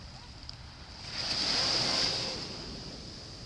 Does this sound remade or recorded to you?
recorded